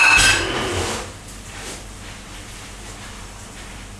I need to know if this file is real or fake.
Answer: real